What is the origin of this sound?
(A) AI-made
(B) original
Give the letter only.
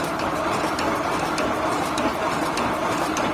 B